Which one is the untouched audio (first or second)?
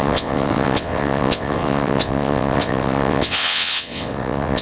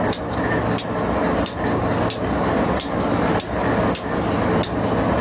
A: second